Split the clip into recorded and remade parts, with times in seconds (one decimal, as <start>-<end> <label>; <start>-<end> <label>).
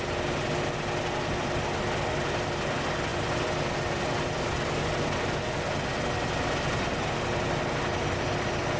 0.0-8.8 recorded